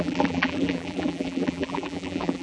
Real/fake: fake